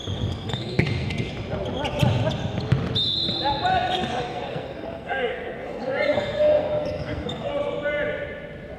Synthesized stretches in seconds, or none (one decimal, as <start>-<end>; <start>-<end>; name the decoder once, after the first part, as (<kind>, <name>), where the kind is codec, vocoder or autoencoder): 0.0-1.3 (codec, SNAC); 3.7-7.5